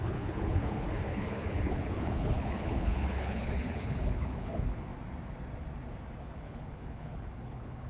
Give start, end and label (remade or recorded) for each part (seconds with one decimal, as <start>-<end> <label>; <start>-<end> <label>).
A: 0.0-4.9 remade; 4.9-6.2 recorded; 6.2-7.9 remade